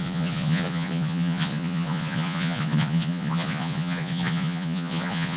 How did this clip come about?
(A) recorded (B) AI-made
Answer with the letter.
B